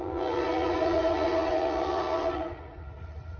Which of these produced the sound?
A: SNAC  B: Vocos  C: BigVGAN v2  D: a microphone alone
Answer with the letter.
B